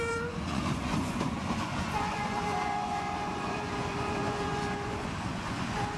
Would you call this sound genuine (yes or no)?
no